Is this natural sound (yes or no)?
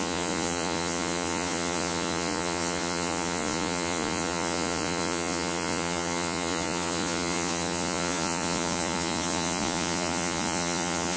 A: no